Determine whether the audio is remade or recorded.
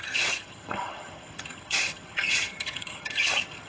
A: remade